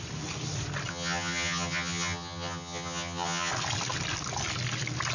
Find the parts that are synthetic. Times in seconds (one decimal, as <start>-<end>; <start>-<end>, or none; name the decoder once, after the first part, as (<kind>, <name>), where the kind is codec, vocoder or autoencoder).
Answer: 0.9-3.5 (vocoder, HiFi-GAN)